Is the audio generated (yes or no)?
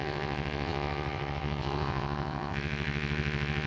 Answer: yes